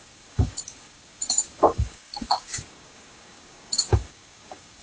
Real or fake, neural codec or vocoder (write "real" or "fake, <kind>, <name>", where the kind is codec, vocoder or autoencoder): fake, codec, DAC